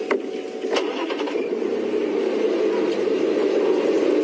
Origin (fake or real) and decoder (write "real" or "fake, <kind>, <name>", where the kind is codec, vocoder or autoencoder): real